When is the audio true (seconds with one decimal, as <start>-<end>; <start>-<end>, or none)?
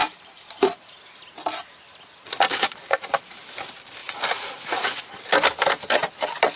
0.9-2.5; 3.4-4.0; 5.2-6.6